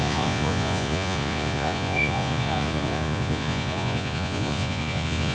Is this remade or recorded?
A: remade